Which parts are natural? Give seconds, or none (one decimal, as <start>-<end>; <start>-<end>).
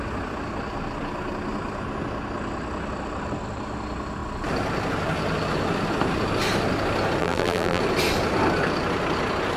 0.0-7.2; 7.8-9.6